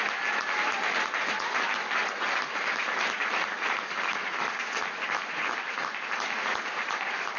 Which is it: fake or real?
real